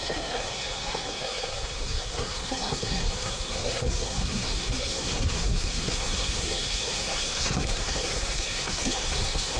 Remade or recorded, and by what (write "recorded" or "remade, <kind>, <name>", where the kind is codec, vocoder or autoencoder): remade, codec, SNAC